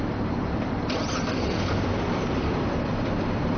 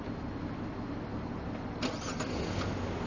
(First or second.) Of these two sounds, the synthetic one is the first